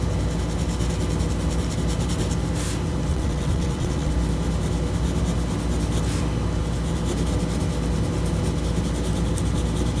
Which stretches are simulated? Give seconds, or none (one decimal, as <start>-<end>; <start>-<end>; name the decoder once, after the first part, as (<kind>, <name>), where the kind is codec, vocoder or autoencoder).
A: 3.1-4.1 (vocoder, WaveNeXt)